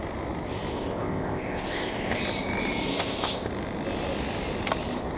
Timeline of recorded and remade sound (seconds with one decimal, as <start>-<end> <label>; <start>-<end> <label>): 0.0-0.7 recorded; 0.7-2.2 remade; 2.2-2.9 recorded; 2.9-3.5 remade; 3.5-5.2 recorded